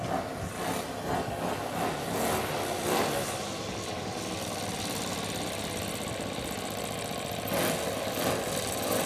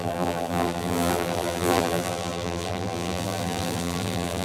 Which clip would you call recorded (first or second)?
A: first